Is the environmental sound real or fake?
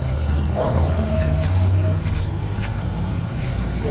fake